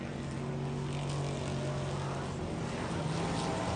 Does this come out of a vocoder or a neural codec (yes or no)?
no